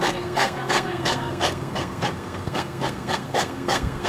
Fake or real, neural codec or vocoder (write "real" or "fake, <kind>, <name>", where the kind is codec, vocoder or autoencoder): fake, codec, SNAC